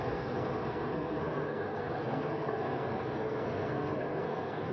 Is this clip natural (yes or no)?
no